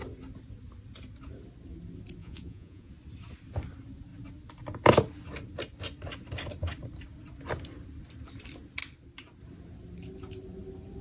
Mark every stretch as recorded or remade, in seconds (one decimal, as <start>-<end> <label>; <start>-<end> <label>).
0.0-2.2 recorded; 2.2-2.9 remade; 2.9-11.0 recorded